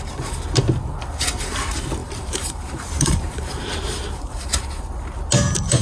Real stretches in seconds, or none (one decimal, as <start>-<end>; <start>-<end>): 0.0-2.0; 5.1-5.8